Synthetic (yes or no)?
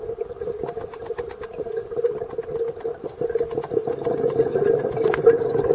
no